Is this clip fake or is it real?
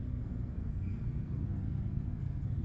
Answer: fake